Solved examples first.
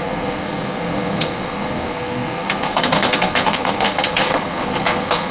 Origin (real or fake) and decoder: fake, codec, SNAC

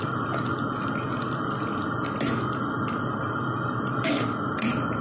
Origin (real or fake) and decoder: real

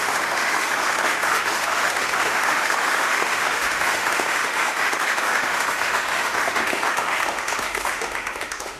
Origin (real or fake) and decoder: fake, autoencoder, DAC-VAE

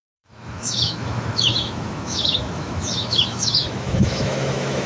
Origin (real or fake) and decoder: fake, autoencoder, DAC-VAE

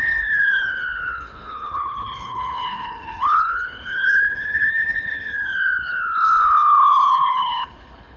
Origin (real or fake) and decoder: fake, codec, HILCodec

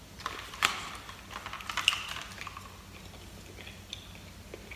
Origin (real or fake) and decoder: real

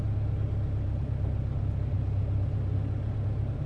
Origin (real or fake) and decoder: real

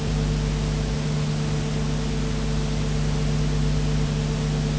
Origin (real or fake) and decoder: real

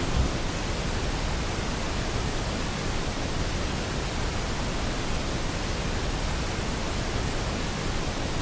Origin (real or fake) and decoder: real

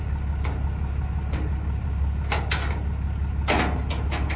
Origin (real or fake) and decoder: real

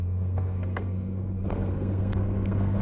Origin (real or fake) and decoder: fake, codec, SNAC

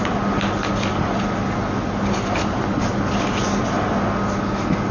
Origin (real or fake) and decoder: real